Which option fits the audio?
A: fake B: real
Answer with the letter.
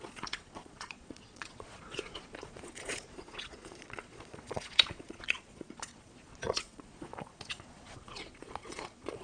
A